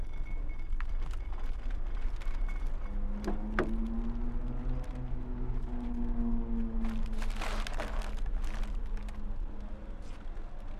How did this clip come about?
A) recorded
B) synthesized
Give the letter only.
A